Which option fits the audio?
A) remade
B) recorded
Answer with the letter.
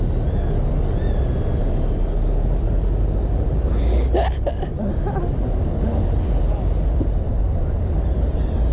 B